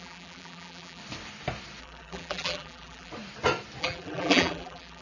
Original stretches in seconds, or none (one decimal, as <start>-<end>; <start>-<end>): 1.0-1.8; 3.1-3.8